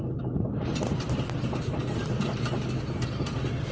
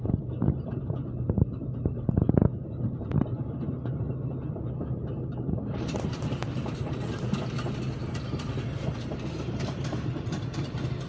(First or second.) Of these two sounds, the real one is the first